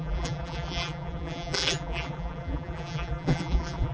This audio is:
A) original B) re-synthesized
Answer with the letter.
B